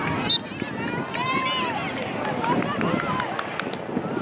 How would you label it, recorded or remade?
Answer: recorded